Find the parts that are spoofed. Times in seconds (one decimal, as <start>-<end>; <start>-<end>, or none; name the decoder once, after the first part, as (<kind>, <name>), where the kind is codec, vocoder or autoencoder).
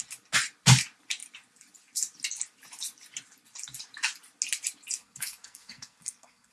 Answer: 5.0-6.5 (codec, SNAC)